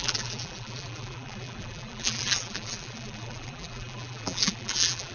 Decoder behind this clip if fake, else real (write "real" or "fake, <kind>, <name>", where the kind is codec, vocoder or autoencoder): fake, vocoder, BigVGAN v2